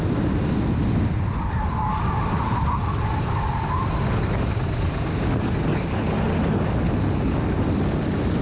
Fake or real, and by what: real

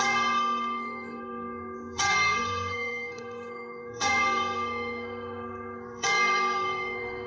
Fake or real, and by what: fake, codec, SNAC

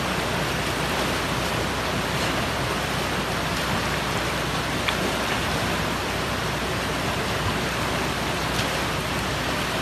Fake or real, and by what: real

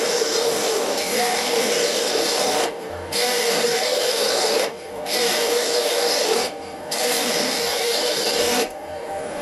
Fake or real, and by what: fake, codec, DAC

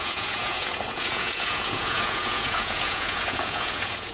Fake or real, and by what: fake, vocoder, Vocos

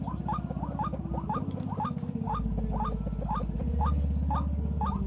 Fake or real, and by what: real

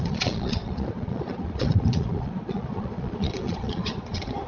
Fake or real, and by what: fake, vocoder, Vocos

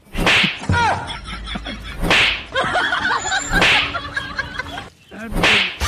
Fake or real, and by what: real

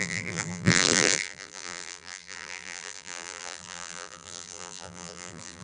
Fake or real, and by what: fake, vocoder, BigVGAN v2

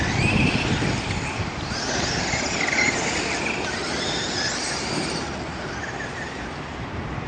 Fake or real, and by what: real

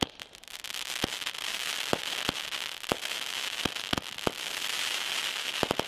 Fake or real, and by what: real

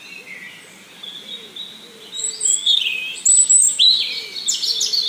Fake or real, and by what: real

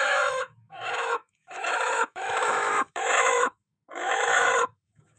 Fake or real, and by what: fake, autoencoder, DAC-VAE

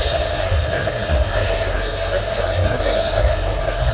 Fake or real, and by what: fake, codec, SNAC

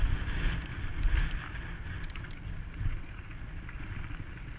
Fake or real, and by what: real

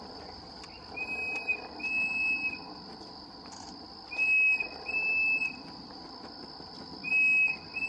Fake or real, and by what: real